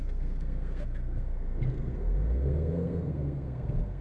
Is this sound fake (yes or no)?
yes